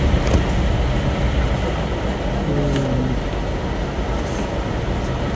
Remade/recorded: recorded